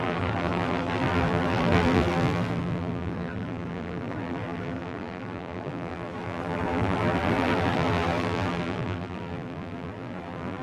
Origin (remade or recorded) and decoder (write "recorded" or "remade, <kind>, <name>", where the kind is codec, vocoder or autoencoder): remade, vocoder, BigVGAN v2